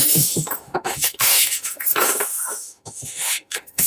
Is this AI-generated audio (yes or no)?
yes